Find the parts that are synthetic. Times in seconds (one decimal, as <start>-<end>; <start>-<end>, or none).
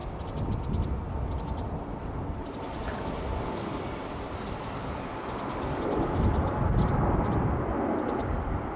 none